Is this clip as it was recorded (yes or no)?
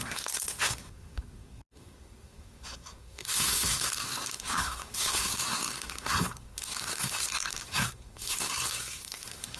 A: no